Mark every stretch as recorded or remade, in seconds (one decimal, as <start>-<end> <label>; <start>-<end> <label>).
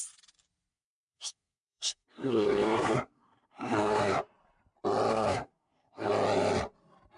0.0-0.7 recorded; 0.7-4.2 remade; 4.2-5.1 recorded; 5.1-6.1 remade; 6.1-7.2 recorded